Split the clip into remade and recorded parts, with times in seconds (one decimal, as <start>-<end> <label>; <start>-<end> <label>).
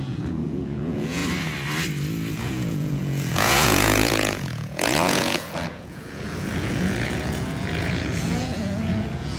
0.0-1.2 remade; 1.2-2.3 recorded; 2.3-9.4 remade